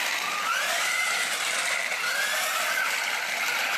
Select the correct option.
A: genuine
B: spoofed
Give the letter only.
A